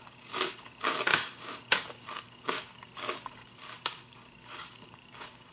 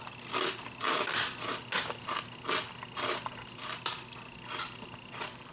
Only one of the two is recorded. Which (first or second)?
second